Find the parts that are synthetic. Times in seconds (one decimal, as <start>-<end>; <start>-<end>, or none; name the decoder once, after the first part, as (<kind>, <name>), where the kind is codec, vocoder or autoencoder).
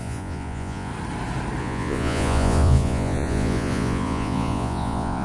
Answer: 0.0-0.9 (vocoder, Vocos); 1.6-5.2